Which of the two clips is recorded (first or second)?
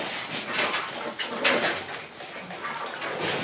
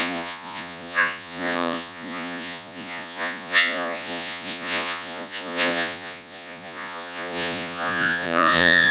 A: first